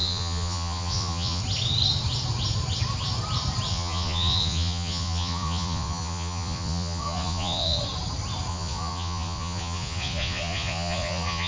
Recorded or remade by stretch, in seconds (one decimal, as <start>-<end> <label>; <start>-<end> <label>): 0.0-1.4 remade; 1.4-3.7 recorded; 3.7-7.8 remade; 7.8-8.5 recorded; 8.5-11.5 remade